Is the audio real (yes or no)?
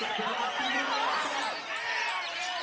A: yes